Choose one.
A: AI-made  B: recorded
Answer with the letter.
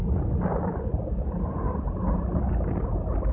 B